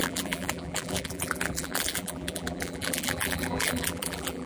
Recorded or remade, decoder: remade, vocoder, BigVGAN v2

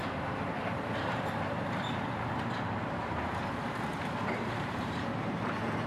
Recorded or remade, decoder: remade, vocoder, BigVGAN v2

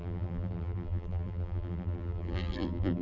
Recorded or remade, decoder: remade, vocoder, BigVGAN v2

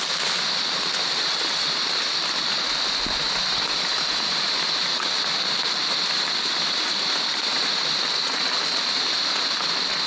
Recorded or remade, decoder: recorded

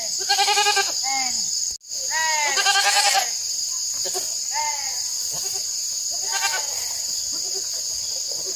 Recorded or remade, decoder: recorded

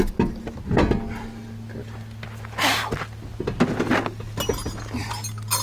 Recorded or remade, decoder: recorded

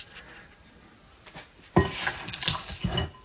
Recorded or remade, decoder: recorded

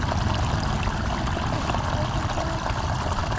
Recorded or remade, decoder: recorded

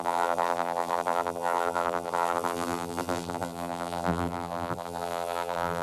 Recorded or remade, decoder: remade, vocoder, BigVGAN v2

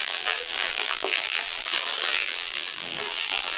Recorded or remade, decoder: remade, vocoder, BigVGAN v2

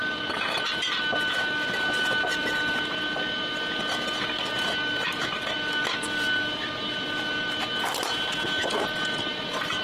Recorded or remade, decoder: recorded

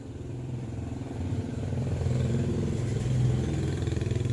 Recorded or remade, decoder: remade, vocoder, BigVGAN v2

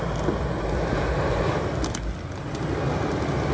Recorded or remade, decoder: recorded